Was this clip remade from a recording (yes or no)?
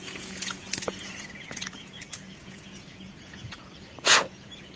yes